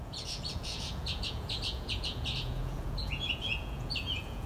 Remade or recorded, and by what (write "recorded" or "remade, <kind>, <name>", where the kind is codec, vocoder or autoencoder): remade, vocoder, Vocos